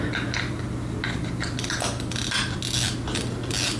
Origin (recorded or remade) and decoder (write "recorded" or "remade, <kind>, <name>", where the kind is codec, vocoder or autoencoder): recorded